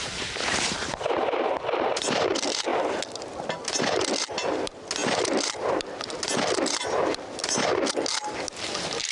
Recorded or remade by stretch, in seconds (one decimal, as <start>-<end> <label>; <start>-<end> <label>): 0.0-9.1 recorded